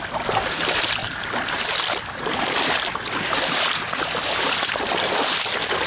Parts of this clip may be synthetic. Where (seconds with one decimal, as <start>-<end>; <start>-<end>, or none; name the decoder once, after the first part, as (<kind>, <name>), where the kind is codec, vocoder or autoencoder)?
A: 1.0-4.5 (vocoder, BigVGAN v2)